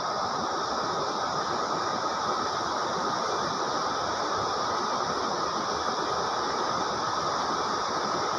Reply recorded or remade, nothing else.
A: recorded